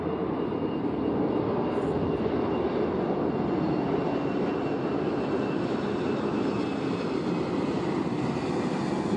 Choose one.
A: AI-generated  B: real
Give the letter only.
A